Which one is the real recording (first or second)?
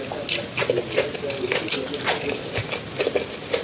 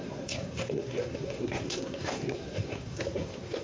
first